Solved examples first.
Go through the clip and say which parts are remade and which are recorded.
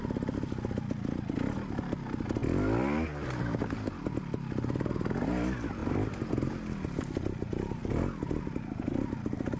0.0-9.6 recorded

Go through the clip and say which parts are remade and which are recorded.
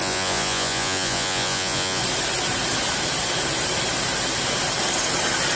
0.0-2.0 remade; 2.0-5.6 recorded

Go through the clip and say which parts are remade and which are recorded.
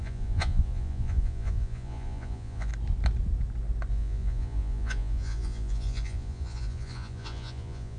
0.0-2.7 remade; 2.7-3.9 recorded; 3.9-8.0 remade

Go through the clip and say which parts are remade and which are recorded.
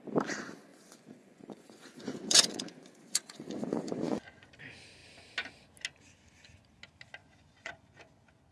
0.0-0.7 recorded; 0.7-4.5 remade; 4.5-7.2 recorded; 7.2-8.0 remade; 8.0-8.5 recorded